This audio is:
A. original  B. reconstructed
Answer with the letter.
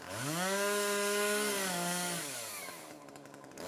B